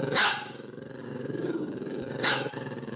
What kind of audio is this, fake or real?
fake